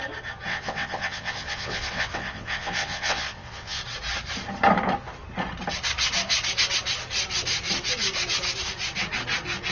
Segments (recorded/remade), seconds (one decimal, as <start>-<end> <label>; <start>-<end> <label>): 0.0-0.5 recorded; 0.5-3.8 remade; 3.8-9.7 recorded